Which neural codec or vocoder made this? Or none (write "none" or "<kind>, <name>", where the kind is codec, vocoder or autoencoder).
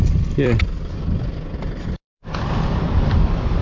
vocoder, BigVGAN v2